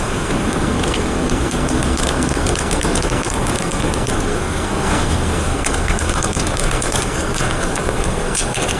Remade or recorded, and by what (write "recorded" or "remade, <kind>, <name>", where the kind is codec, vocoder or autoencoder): remade, codec, SNAC